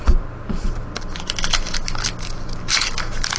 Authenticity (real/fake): real